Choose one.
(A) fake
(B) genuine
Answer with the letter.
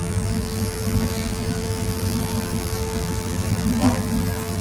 A